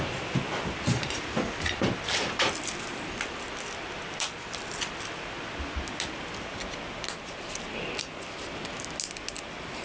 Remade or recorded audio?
recorded